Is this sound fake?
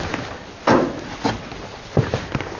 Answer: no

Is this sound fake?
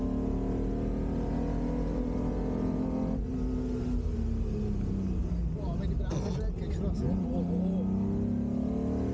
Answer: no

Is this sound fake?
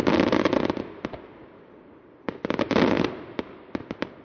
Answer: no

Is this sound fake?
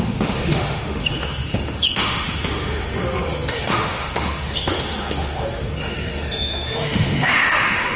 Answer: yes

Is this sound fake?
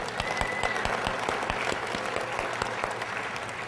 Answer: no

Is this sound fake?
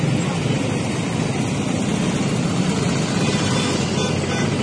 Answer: no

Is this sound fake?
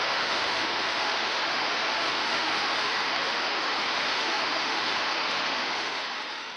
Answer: yes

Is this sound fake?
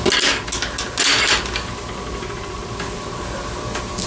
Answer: no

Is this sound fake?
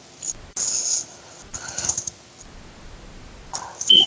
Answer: no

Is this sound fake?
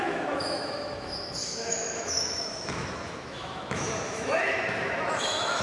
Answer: yes